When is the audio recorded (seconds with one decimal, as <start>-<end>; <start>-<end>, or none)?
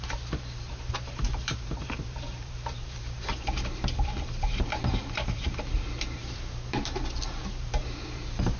none